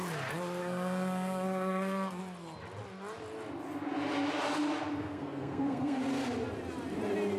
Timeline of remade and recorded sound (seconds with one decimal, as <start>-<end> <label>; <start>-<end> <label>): 0.0-0.6 recorded; 0.6-2.2 remade; 2.2-5.0 recorded; 5.0-6.0 remade; 6.0-7.4 recorded